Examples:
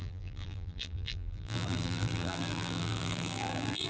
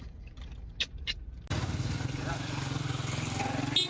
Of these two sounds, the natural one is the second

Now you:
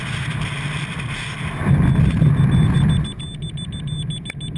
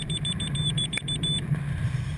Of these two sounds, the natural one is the first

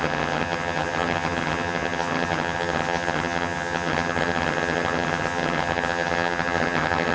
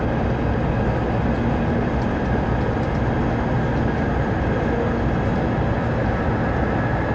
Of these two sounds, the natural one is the second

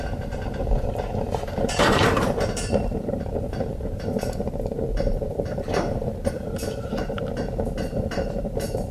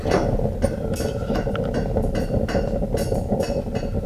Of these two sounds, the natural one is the second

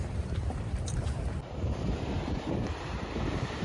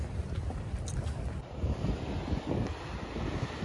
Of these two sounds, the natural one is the second